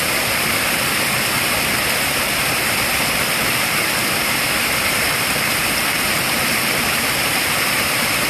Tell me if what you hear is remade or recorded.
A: remade